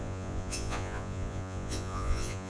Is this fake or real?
fake